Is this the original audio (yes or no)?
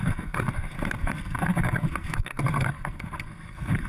no